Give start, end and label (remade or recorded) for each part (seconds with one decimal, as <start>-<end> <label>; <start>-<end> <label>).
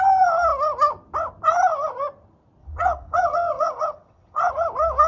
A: 0.0-2.6 recorded; 2.6-4.5 remade; 4.5-5.1 recorded